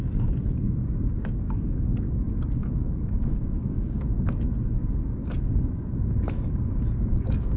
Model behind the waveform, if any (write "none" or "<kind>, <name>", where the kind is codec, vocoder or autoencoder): codec, DAC